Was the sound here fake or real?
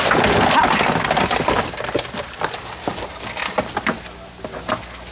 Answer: real